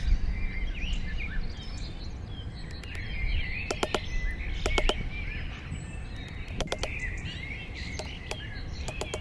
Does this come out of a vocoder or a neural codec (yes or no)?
no